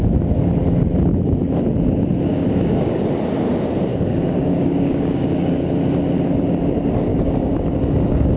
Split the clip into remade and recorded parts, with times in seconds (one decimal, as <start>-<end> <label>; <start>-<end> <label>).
0.0-2.3 recorded; 2.3-3.0 remade; 3.0-3.9 recorded; 3.9-5.7 remade; 5.7-7.1 recorded; 7.1-8.4 remade